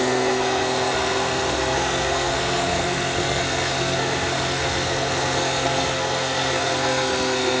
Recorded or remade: remade